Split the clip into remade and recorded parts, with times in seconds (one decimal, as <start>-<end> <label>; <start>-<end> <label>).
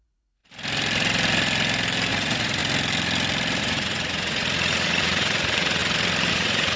0.0-0.4 remade; 0.4-2.1 recorded; 2.1-2.6 remade; 2.6-3.6 recorded; 3.6-5.8 remade; 5.8-6.3 recorded; 6.3-6.8 remade